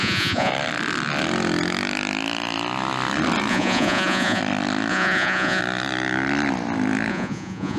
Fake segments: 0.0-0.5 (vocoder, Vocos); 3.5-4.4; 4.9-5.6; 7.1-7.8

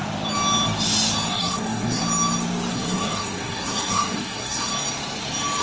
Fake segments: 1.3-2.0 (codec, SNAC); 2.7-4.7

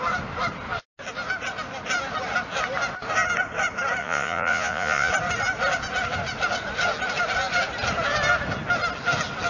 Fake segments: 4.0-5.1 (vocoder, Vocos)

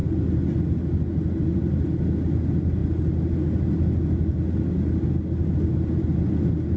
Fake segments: none

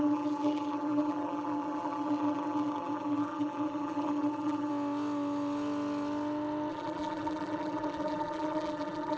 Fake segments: 0.0-4.7 (vocoder, BigVGAN v2); 6.7-9.2